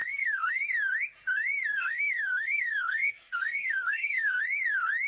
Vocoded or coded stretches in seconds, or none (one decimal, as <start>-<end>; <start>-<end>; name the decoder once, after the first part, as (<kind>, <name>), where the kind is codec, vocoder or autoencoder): 0.0-0.6 (codec, SNAC); 1.7-4.4